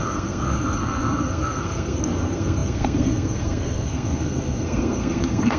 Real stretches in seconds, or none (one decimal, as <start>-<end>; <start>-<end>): none